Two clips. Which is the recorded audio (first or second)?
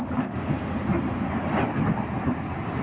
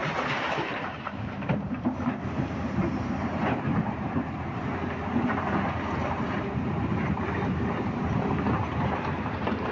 first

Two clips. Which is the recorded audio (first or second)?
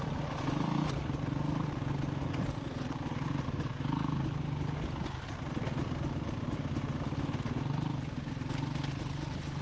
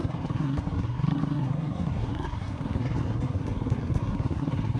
first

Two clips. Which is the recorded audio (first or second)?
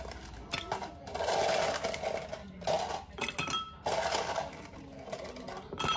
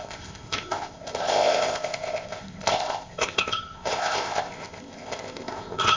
first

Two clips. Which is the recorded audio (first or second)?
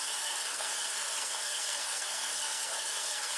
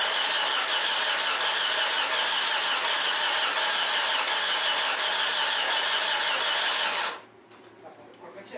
second